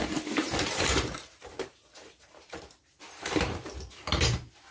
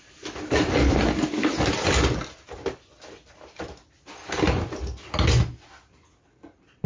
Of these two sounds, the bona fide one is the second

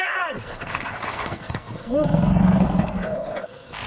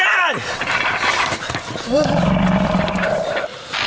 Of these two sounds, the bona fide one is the second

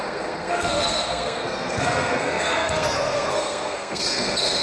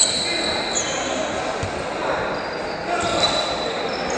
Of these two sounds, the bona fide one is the second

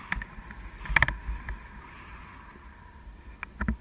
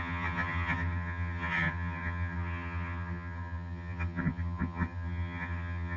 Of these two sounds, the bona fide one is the first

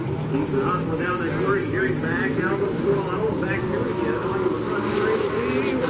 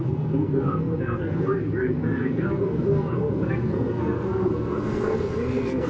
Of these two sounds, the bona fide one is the first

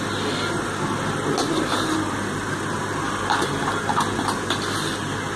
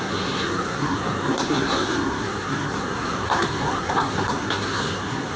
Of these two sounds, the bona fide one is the first